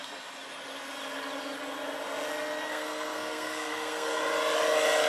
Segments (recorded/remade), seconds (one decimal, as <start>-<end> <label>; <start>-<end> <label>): 0.0-2.7 recorded; 2.7-4.2 remade; 4.2-5.1 recorded